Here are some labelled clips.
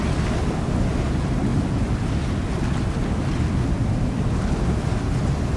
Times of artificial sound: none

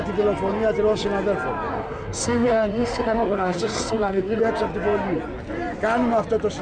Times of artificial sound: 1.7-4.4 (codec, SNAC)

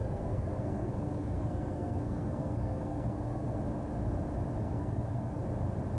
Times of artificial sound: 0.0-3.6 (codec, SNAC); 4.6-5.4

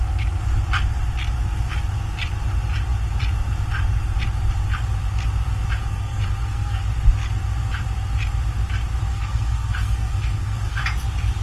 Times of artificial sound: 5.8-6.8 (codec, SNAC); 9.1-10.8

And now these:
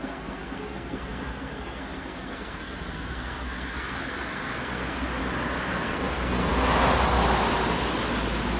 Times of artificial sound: 0.0-5.2 (codec, SNAC); 5.7-6.5